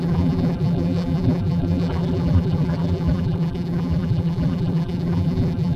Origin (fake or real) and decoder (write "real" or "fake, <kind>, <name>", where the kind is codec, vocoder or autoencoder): fake, vocoder, BigVGAN v2